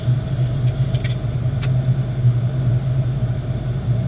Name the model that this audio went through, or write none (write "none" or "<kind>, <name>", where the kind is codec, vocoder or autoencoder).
none